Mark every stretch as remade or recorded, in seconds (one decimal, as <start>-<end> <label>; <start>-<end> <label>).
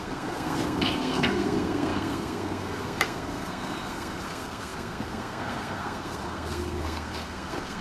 0.0-7.8 remade